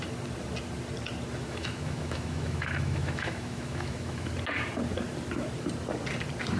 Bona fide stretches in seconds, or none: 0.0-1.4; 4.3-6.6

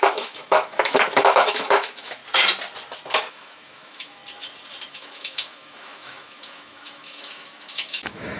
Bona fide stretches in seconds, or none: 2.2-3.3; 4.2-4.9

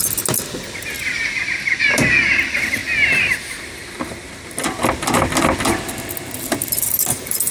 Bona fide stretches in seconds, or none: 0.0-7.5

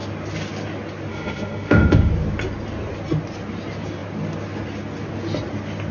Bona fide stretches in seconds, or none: 0.0-1.1; 2.1-5.9